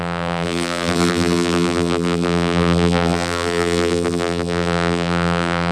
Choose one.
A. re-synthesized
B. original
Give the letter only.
A